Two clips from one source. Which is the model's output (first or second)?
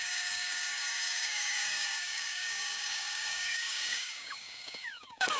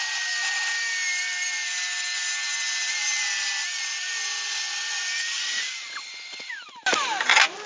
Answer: first